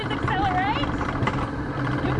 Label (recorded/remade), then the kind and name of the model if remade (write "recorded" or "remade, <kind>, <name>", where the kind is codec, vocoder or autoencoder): remade, vocoder, BigVGAN v2